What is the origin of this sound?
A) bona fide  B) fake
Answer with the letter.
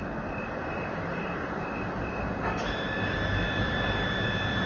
B